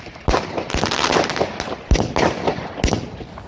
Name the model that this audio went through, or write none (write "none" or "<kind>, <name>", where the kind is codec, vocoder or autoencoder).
none